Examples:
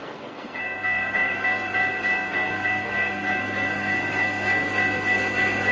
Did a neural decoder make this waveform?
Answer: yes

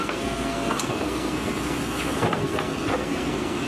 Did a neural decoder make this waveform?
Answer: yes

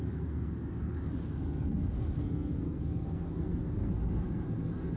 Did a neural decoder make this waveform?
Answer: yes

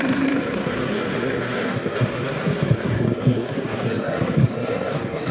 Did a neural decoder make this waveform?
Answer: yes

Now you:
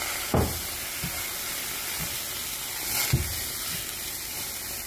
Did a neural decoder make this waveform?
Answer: no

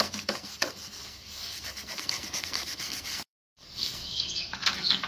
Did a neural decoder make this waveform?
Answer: yes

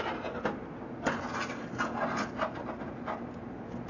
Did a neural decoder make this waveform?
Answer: no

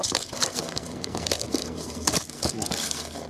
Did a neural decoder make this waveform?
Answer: yes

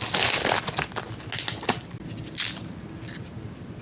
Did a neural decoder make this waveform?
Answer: no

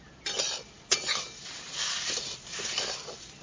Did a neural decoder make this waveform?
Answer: no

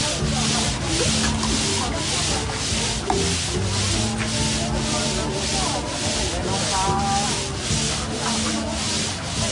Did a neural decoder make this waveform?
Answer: no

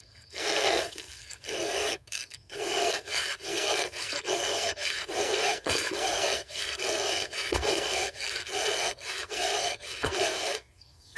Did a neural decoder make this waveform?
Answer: yes